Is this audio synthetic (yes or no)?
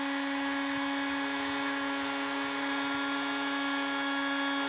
no